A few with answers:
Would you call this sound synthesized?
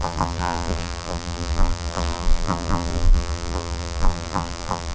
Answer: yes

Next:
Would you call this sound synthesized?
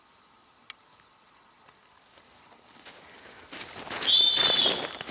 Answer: no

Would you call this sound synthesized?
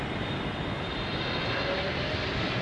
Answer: no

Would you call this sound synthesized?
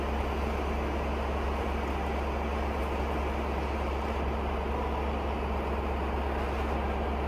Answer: no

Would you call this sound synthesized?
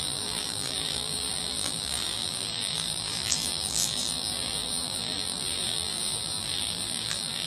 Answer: yes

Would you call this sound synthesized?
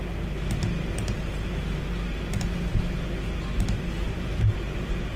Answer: no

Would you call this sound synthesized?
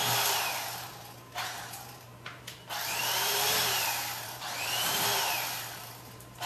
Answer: yes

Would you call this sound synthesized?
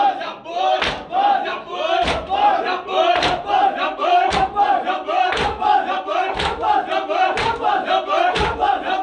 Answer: yes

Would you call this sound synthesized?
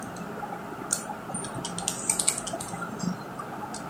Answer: no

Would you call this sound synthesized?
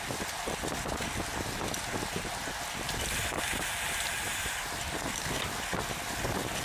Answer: no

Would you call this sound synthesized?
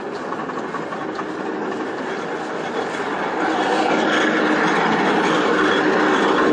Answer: no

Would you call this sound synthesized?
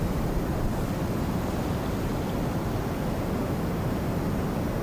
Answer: no